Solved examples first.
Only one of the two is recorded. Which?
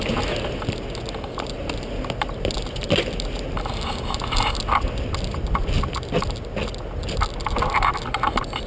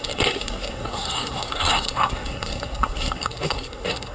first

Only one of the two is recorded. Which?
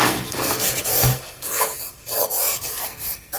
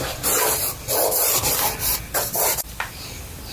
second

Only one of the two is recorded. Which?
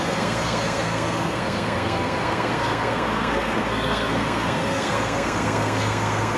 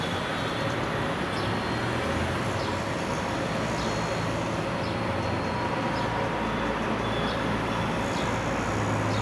second